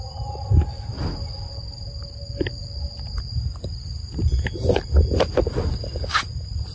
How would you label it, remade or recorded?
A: recorded